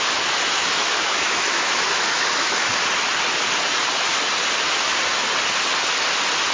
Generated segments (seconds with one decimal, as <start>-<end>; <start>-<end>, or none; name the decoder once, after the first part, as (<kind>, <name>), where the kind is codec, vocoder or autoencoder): 0.6-2.7 (autoencoder, DAC-VAE)